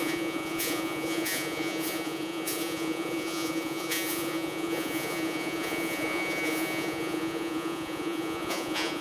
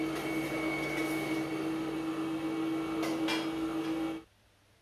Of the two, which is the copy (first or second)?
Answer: first